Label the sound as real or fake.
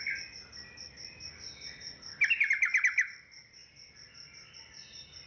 real